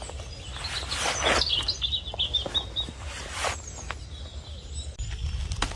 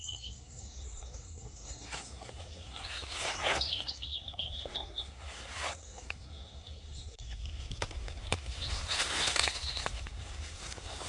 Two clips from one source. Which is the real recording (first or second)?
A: first